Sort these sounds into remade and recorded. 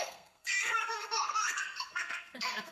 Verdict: remade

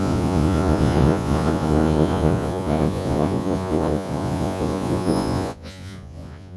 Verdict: remade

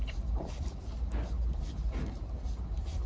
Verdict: recorded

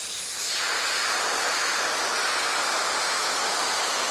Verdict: recorded